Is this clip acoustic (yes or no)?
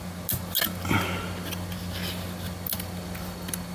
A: yes